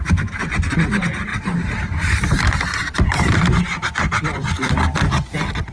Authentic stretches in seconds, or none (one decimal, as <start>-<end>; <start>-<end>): 0.0-1.3; 4.7-5.7